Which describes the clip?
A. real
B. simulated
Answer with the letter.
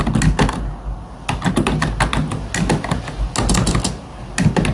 A